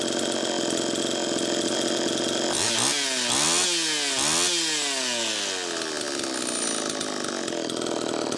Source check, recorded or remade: recorded